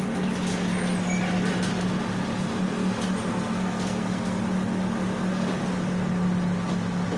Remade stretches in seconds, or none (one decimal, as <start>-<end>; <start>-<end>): 3.3-4.4